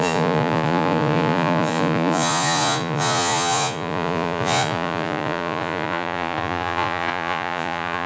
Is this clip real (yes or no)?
no